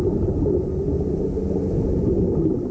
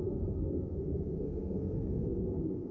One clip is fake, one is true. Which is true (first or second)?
first